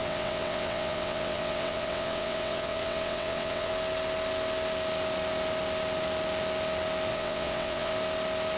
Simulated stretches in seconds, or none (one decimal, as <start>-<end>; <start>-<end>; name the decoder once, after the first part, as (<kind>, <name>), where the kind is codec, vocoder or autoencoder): 0.0-3.7 (vocoder, WaveNeXt); 7.1-7.9